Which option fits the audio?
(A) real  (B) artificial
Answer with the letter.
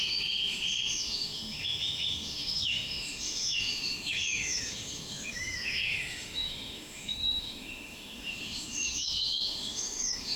B